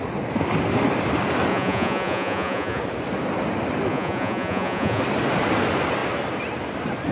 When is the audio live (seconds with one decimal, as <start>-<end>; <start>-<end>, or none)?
0.0-1.5; 2.8-3.9; 5.0-7.1